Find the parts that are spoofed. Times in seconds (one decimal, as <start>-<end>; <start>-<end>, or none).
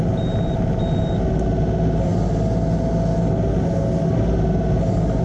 none